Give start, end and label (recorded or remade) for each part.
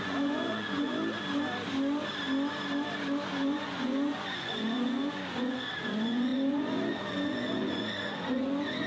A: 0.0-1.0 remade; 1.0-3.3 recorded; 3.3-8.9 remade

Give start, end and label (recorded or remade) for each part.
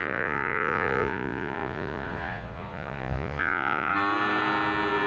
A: 0.0-3.9 remade; 3.9-5.1 recorded